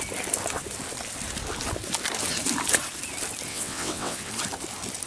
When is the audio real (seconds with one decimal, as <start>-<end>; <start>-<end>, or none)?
0.0-3.5; 4.3-5.1